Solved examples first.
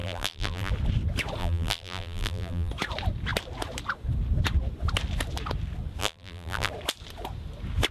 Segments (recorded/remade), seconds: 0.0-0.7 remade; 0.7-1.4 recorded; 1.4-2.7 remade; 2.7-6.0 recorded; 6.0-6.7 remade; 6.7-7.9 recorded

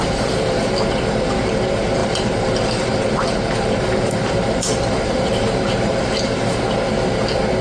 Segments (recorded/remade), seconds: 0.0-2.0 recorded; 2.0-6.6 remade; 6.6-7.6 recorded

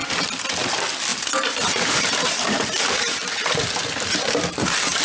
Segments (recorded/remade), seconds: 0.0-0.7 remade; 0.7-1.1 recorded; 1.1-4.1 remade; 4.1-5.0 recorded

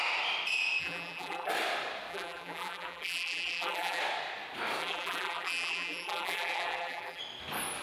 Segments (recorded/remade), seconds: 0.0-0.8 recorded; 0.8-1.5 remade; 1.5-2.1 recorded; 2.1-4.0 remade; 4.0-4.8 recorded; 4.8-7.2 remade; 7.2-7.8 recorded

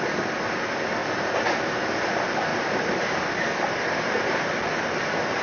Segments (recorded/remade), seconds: 0.0-1.0 recorded; 1.0-1.8 remade; 1.8-2.5 recorded; 2.5-4.6 remade; 4.6-5.4 recorded

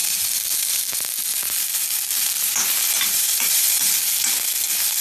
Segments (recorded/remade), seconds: 0.0-0.9 remade; 0.9-2.1 recorded; 2.1-4.0 remade; 4.0-5.0 recorded

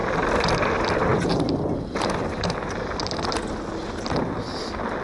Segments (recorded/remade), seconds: 0.0-0.7 remade; 0.7-5.0 recorded